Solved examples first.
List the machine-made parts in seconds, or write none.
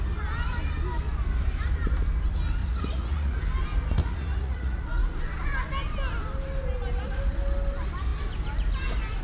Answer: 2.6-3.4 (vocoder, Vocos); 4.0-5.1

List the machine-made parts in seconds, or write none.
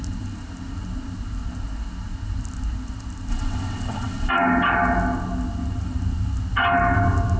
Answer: 3.3-4.3 (vocoder, WaveNeXt)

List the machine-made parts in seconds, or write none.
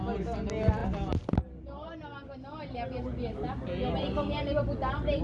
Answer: none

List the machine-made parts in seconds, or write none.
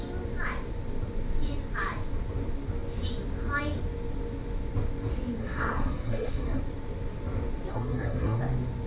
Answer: 5.4-6.6 (codec, SNAC); 7.7-8.4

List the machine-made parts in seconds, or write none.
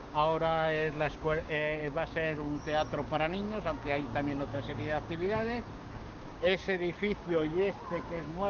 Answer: 0.0-8.5 (codec, DAC)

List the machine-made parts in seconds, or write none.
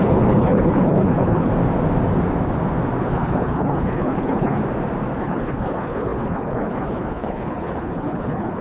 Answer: 0.0-1.5 (codec, HILCodec); 3.0-4.6; 5.2-8.6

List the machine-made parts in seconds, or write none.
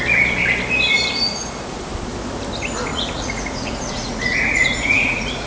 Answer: 2.9-5.5 (vocoder, Vocos)